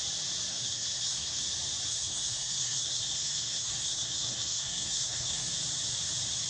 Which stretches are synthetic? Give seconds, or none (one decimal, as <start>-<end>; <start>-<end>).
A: 0.5-1.4; 1.9-5.5